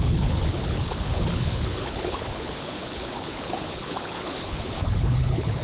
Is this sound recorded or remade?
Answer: remade